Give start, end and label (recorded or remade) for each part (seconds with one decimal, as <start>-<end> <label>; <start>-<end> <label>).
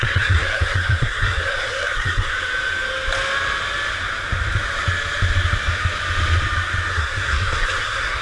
0.0-2.3 remade; 2.3-6.9 recorded; 6.9-8.2 remade